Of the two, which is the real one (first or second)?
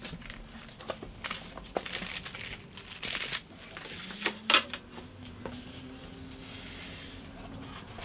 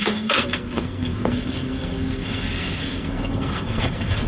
first